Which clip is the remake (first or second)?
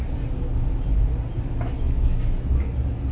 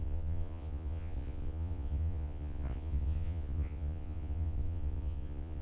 second